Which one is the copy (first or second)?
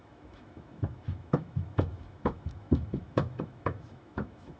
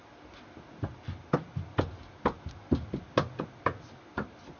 first